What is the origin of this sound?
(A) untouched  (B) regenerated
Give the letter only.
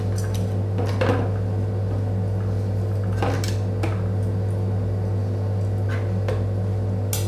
A